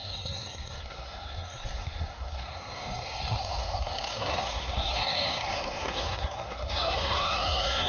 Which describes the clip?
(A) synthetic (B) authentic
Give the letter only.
A